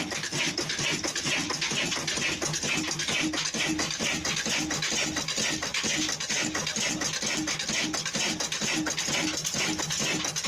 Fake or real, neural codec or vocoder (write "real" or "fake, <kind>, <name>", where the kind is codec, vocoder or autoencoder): real